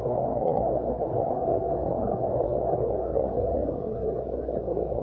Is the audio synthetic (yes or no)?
yes